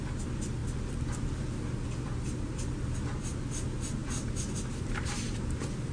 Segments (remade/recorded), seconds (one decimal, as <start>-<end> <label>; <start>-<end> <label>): 0.0-4.0 recorded; 4.0-5.9 remade